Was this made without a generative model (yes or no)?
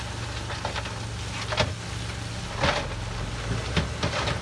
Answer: yes